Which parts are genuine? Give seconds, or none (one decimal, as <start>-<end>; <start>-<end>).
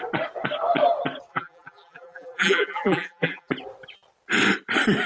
0.0-1.3; 3.5-5.1